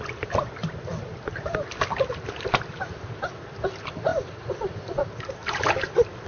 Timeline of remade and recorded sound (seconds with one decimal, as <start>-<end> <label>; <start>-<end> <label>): 0.0-6.3 recorded